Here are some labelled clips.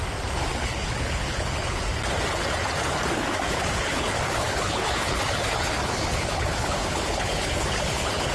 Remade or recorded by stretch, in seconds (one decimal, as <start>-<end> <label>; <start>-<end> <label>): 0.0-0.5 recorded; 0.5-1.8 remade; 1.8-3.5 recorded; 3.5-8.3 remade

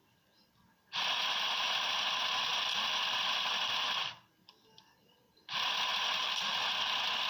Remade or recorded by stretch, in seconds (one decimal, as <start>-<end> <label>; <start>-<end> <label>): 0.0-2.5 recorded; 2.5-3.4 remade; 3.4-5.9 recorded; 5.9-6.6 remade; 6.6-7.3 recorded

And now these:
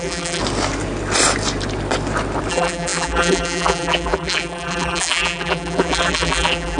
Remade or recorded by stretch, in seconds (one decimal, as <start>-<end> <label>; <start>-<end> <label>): 0.0-0.4 remade; 0.4-2.5 recorded; 2.5-6.8 remade